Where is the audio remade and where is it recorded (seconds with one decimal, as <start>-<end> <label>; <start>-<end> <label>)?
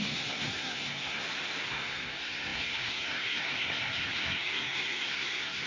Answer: 0.0-1.2 remade; 1.2-1.7 recorded; 1.7-5.7 remade